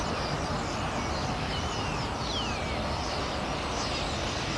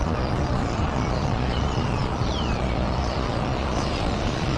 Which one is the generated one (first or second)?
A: second